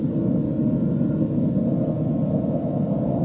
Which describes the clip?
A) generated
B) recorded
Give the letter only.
B